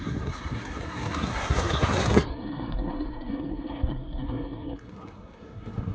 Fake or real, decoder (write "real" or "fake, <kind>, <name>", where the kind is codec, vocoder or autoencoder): fake, codec, SNAC